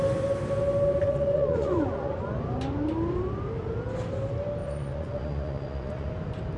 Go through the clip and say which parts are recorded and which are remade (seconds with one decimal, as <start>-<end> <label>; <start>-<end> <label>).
0.0-1.0 recorded; 1.0-2.2 remade; 2.2-4.6 recorded; 4.6-6.1 remade; 6.1-6.6 recorded